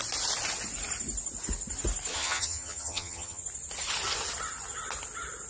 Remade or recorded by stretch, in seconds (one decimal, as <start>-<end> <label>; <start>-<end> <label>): 0.0-2.1 recorded; 2.1-3.4 remade; 3.4-5.5 recorded